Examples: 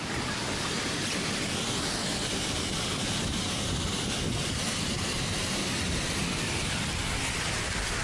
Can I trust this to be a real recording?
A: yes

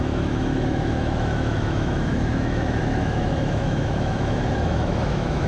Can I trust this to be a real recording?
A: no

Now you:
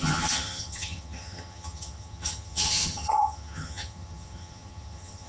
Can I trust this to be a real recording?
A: no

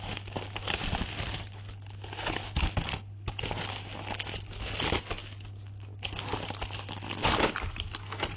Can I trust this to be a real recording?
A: yes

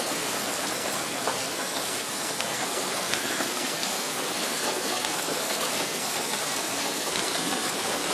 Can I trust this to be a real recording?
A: no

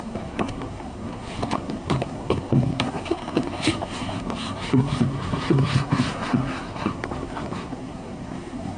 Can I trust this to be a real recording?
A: no